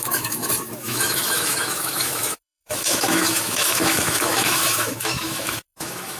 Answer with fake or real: fake